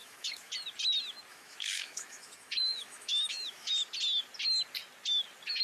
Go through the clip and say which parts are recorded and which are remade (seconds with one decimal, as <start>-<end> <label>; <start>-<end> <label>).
0.0-0.5 remade; 0.5-1.3 recorded; 1.3-3.7 remade; 3.7-5.6 recorded